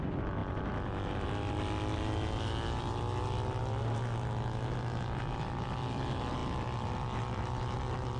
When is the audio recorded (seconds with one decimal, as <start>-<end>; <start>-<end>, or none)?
0.0-8.2